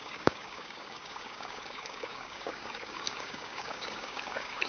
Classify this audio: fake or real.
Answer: fake